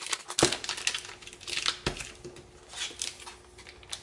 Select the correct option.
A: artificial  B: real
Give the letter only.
B